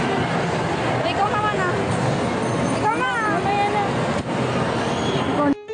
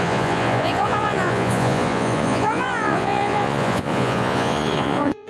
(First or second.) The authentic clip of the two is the first